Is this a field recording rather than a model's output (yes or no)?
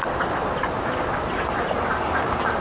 yes